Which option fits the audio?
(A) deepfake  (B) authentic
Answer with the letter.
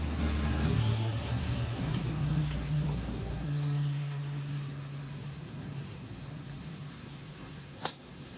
A